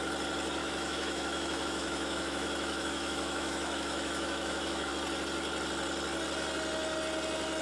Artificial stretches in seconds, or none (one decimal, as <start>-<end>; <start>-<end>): 0.6-4.9